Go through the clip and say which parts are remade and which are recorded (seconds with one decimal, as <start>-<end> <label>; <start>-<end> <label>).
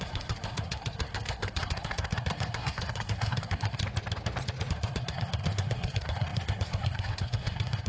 0.0-3.8 remade; 3.8-4.7 recorded; 4.7-7.9 remade